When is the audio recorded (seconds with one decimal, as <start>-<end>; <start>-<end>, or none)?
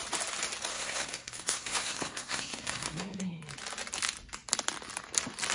0.0-0.7; 3.4-5.5